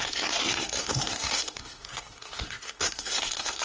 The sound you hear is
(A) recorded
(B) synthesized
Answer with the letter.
B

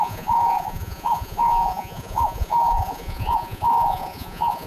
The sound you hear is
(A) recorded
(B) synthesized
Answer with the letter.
B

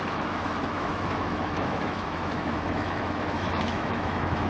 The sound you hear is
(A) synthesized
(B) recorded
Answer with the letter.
A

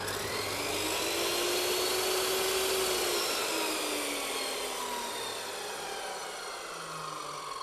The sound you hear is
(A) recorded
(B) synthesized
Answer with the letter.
A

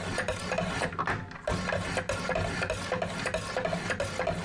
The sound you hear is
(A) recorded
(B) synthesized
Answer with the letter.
A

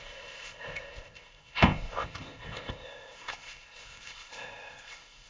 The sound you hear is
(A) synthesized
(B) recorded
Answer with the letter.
A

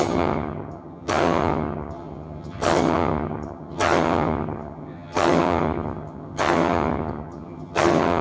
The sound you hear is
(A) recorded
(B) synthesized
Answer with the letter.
B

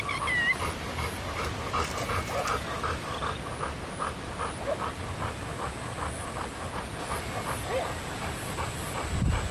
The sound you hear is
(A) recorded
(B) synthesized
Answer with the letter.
A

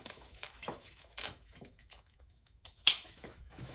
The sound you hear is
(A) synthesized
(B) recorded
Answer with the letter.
A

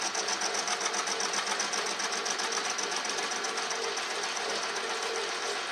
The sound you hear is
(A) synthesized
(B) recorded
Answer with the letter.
B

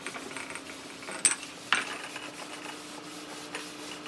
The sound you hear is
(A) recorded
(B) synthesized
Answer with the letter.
A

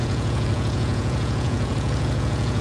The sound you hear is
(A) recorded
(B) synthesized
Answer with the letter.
B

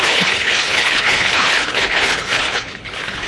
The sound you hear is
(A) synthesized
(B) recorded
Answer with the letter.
A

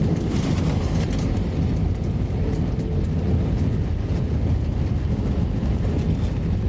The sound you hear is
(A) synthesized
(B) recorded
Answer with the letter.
B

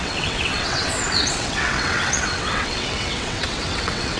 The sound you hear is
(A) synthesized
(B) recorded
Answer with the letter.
A